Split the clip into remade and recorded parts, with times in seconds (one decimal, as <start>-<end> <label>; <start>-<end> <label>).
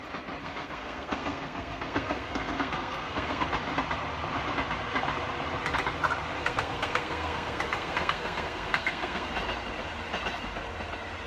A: 0.0-0.4 recorded; 0.4-3.5 remade; 3.5-6.4 recorded; 6.4-9.3 remade; 9.3-11.3 recorded